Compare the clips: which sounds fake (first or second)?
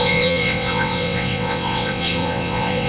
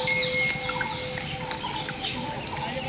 first